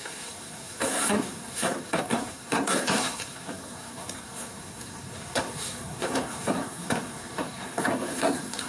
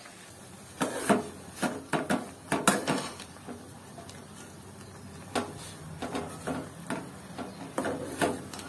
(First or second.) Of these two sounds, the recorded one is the second